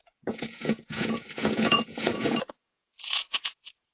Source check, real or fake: fake